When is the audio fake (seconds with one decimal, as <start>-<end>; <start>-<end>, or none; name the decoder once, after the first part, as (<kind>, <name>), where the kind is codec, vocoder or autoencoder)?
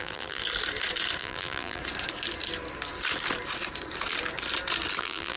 0.0-0.4 (vocoder, BigVGAN v2); 1.2-1.8; 5.0-5.4